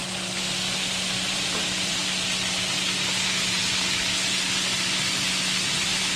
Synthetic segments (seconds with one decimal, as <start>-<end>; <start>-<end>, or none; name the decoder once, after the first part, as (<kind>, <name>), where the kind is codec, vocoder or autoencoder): 1.3-2.0 (vocoder, BigVGAN v2); 5.7-6.2